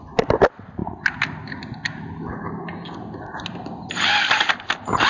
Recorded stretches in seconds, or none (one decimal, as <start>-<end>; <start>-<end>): 0.0-5.1